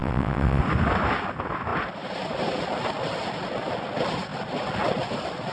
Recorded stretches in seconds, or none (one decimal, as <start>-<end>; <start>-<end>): 0.6-5.5